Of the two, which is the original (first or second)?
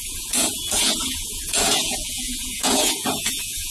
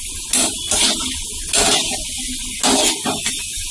second